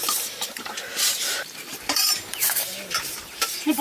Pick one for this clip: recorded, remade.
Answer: remade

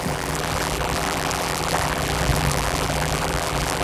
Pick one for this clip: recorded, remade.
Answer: remade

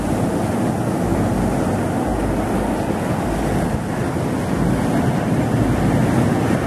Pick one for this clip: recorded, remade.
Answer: recorded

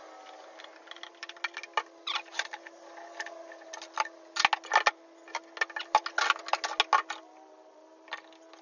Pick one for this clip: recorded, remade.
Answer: recorded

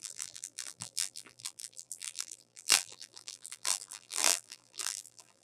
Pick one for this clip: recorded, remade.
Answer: remade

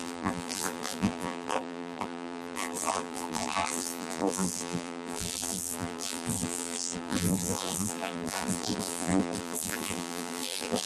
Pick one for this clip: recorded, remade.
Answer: remade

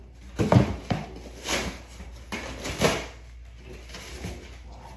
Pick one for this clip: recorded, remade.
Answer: recorded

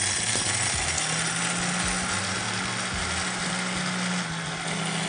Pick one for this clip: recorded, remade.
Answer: recorded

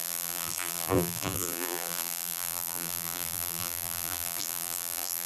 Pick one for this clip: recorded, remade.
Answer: remade